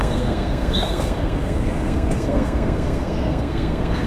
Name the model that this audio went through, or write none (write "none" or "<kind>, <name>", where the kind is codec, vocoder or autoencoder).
codec, SNAC